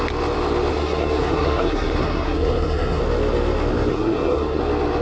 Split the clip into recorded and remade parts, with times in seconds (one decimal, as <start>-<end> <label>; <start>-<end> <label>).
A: 0.0-0.7 recorded; 0.7-3.0 remade; 3.0-3.9 recorded; 3.9-4.6 remade; 4.6-5.0 recorded